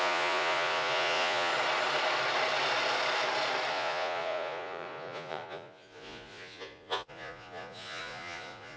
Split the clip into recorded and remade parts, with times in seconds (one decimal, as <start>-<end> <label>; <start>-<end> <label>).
0.0-1.5 remade; 1.5-3.7 recorded; 3.7-8.8 remade